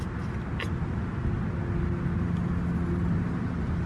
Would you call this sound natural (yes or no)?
yes